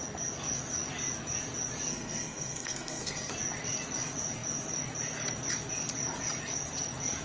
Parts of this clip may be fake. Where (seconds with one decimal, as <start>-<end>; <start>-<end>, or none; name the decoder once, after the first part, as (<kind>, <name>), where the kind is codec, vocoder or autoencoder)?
1.9-3.3 (codec, SNAC)